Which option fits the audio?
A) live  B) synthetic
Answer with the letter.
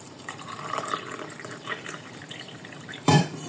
B